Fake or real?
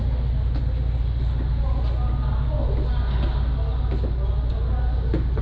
real